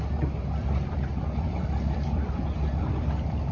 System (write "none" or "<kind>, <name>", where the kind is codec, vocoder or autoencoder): vocoder, BigVGAN v2